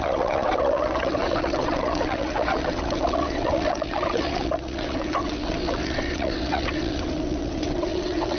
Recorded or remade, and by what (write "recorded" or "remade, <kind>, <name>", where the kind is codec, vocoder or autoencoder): remade, vocoder, WaveNeXt